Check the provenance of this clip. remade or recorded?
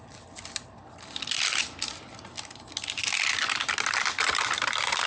recorded